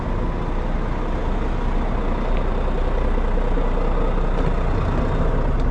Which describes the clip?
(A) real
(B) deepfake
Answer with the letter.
A